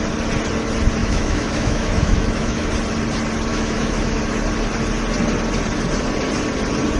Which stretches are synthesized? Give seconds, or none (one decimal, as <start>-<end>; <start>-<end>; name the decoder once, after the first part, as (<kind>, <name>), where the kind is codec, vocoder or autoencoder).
1.0-2.7 (autoencoder, DAC-VAE); 3.5-4.2